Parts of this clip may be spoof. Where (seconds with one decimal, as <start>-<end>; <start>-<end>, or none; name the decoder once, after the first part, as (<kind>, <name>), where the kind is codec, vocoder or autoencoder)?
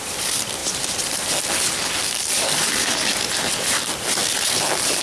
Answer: 0.0-0.6 (vocoder, BigVGAN v2); 3.6-4.2